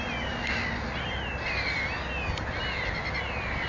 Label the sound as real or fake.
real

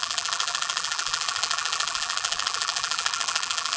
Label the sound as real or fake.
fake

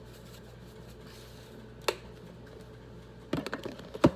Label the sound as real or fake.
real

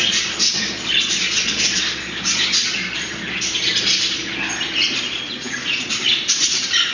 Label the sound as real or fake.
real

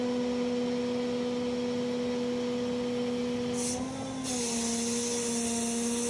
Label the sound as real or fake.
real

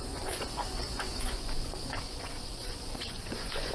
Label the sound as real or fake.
fake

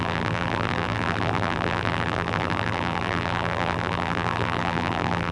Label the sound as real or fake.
fake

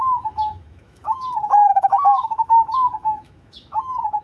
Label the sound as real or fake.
fake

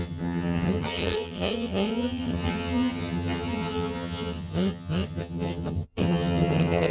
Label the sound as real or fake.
fake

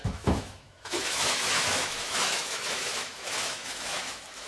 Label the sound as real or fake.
fake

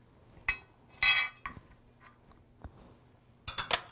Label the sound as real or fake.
real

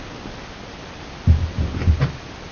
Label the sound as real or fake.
real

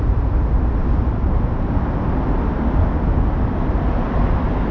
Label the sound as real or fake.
real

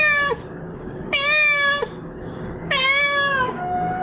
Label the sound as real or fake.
fake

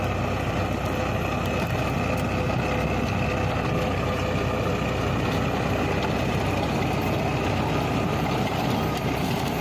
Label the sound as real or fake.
real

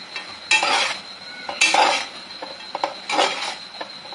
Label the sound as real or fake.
real